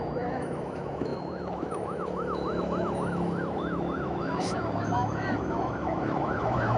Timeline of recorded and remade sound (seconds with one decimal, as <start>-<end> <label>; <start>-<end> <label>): 0.0-6.8 remade